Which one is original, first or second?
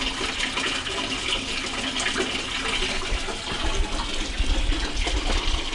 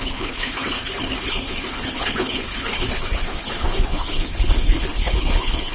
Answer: first